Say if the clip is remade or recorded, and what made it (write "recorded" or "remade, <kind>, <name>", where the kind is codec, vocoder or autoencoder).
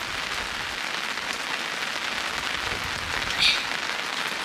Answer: recorded